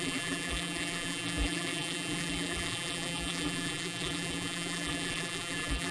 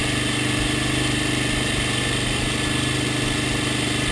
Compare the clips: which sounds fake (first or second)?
first